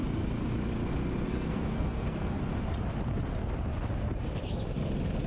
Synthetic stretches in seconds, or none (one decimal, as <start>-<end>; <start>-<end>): 1.3-2.4